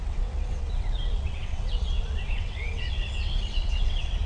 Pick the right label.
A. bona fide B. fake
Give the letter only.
B